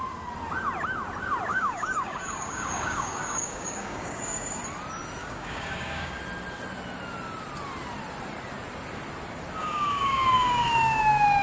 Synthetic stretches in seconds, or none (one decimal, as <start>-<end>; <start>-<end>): 1.5-4.6; 5.2-6.2; 9.6-11.0